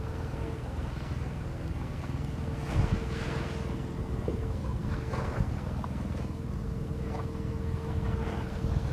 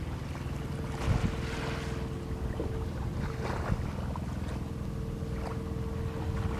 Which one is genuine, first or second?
second